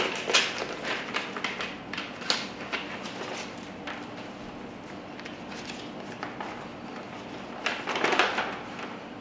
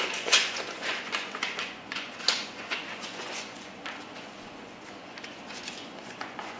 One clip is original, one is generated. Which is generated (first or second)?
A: second